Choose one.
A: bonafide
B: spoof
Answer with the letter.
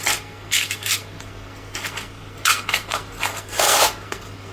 B